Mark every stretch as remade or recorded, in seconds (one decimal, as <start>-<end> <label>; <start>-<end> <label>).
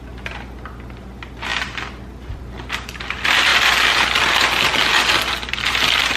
0.0-6.2 recorded